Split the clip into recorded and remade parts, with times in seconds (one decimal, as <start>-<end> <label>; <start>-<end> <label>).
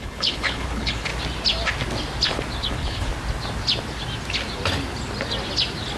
0.0-1.1 remade; 1.1-2.7 recorded; 2.7-3.1 remade; 3.1-6.0 recorded